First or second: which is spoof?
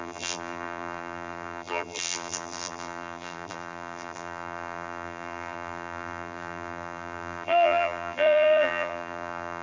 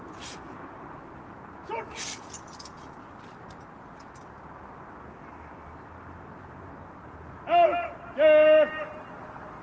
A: first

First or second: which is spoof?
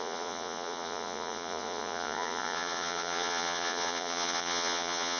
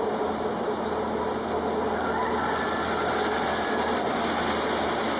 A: first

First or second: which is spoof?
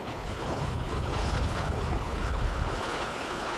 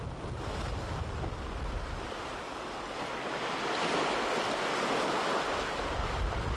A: first